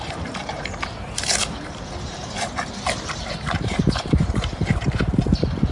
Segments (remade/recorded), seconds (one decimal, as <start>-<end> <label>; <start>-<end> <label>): 0.0-5.7 remade